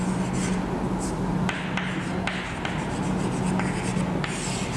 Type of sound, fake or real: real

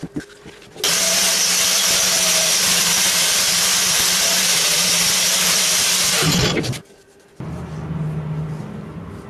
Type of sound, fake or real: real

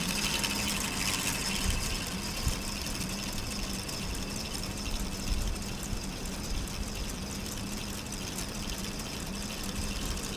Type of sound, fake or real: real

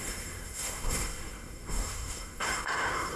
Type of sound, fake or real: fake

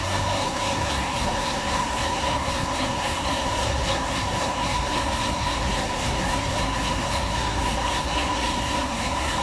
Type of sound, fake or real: fake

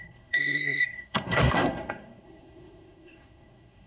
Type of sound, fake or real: fake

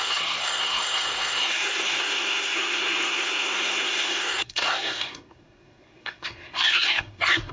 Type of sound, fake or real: fake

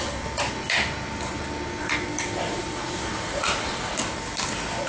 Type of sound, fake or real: real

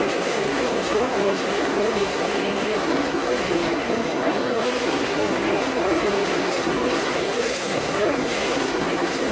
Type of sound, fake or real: fake